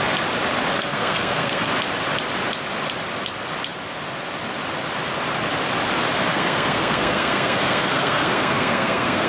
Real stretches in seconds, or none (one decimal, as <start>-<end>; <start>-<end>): 0.0-0.7; 1.7-6.3